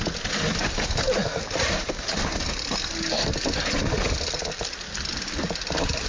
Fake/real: real